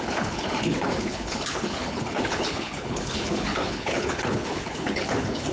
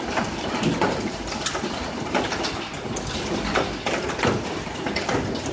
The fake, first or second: first